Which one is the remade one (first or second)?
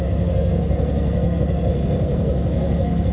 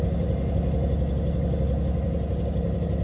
first